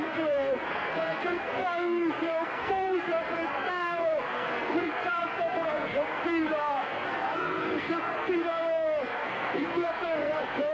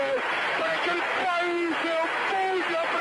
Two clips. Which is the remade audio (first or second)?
first